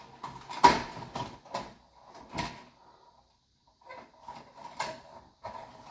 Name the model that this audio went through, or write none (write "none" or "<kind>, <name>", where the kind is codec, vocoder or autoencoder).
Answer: none